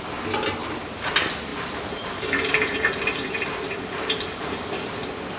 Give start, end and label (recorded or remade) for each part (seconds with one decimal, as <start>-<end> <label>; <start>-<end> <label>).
0.0-0.6 recorded; 0.6-1.1 remade; 1.1-1.5 recorded; 1.5-4.7 remade; 4.7-5.4 recorded